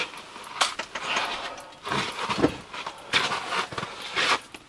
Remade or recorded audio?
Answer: recorded